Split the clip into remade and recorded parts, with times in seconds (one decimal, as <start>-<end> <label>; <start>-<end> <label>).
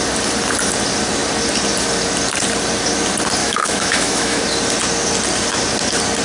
0.0-3.4 recorded; 3.4-4.4 remade; 4.4-6.2 recorded